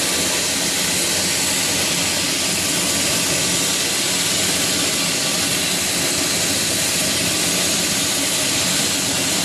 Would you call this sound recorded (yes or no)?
yes